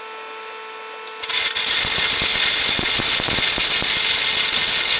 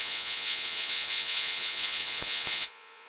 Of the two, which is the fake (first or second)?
second